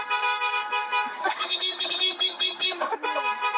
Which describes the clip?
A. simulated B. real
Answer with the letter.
A